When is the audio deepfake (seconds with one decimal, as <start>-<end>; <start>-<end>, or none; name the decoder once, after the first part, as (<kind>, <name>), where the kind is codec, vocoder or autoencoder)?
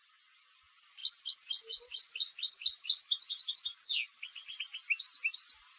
none